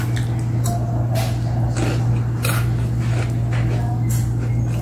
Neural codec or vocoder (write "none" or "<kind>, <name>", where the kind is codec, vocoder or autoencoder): none